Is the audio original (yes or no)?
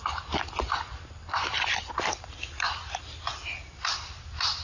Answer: yes